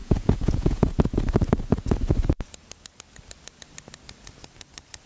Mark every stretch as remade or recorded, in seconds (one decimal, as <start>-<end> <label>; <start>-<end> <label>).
0.0-0.9 remade; 0.9-5.1 recorded